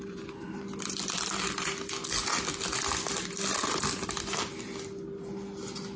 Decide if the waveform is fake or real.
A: real